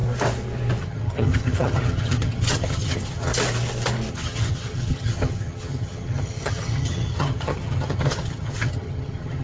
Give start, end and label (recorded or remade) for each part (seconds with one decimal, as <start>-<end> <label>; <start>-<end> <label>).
0.0-0.8 recorded; 0.8-3.3 remade; 3.3-4.1 recorded; 4.1-9.4 remade